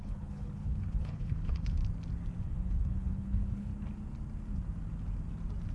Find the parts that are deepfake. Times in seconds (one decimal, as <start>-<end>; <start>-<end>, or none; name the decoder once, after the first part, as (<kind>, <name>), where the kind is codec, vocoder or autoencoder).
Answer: 0.0-1.8 (codec, HILCodec); 2.4-3.7